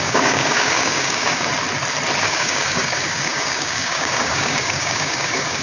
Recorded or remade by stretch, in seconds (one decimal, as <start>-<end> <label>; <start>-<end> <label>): 0.0-1.5 remade; 1.5-2.2 recorded; 2.2-5.6 remade

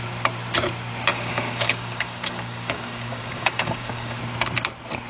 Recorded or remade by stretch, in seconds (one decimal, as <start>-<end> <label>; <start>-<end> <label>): 0.0-1.1 recorded; 1.1-4.2 remade; 4.2-5.1 recorded

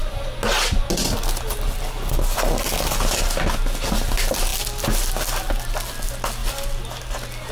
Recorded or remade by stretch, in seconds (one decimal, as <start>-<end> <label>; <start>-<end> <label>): 0.0-7.5 recorded